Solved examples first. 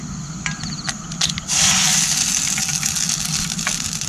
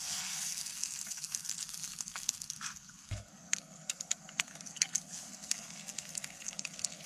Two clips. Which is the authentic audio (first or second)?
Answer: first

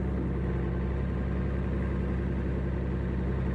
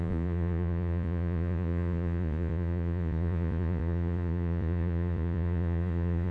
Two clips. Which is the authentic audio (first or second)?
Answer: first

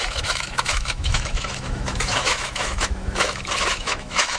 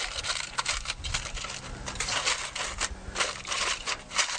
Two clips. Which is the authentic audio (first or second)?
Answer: second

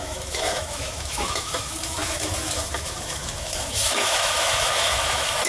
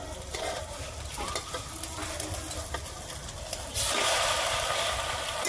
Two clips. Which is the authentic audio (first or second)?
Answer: second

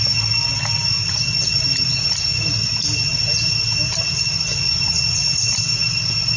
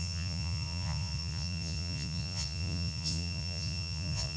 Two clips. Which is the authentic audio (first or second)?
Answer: first